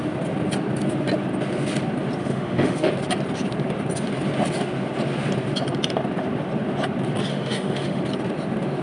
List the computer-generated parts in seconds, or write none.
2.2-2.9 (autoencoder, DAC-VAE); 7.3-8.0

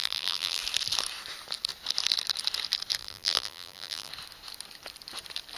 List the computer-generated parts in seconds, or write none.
0.0-0.6 (vocoder, BigVGAN v2); 3.0-4.1

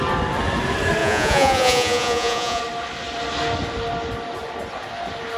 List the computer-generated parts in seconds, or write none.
1.0-2.6 (vocoder, Vocos)

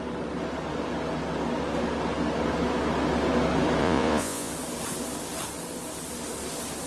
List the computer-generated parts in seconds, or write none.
3.8-4.5 (vocoder, Vocos)

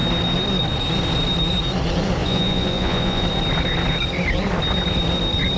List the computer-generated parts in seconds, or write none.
2.2-3.2 (vocoder, Vocos)

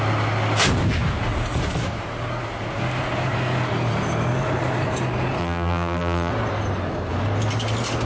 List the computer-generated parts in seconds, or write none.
5.4-6.3 (vocoder, BigVGAN v2)

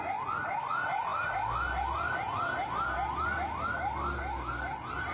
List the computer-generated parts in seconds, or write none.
none

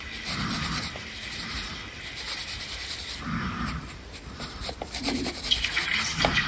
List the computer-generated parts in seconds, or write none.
none